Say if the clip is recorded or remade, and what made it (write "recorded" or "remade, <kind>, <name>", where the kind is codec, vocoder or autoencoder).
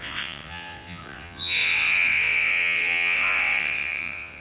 remade, vocoder, WaveNeXt